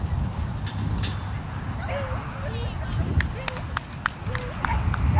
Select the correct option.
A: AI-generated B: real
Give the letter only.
B